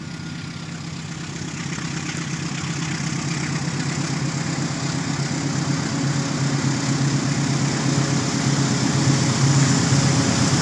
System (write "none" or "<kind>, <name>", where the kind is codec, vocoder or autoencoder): none